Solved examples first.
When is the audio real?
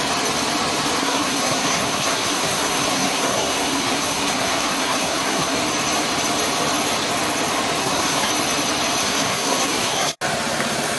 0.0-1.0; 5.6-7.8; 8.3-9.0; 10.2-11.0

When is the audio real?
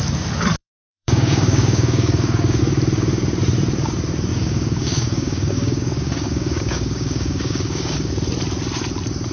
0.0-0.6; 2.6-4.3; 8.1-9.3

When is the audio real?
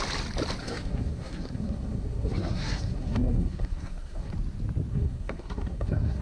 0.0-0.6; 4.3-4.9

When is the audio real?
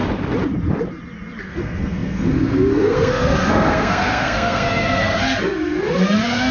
0.0-1.4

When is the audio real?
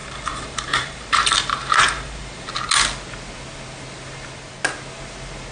2.5-5.5